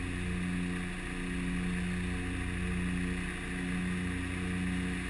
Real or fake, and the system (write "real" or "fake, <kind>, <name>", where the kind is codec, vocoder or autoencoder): real